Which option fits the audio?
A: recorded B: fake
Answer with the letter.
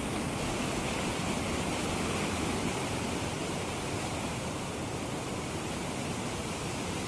A